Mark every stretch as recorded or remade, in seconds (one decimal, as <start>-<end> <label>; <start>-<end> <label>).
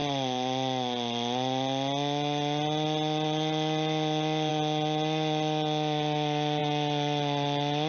0.0-7.9 recorded